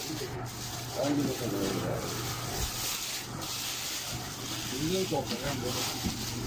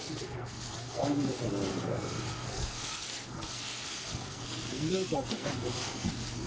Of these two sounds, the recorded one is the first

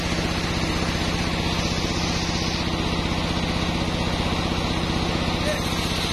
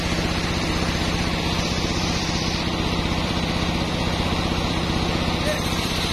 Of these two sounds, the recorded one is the first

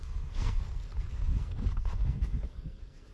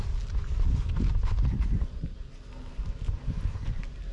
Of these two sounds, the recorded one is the second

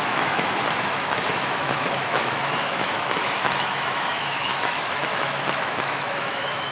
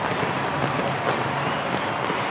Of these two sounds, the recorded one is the second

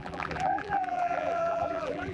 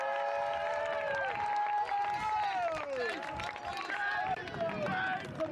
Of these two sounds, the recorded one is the second